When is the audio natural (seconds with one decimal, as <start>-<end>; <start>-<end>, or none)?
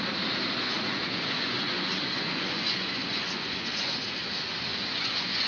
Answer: 0.0-0.6; 3.9-4.7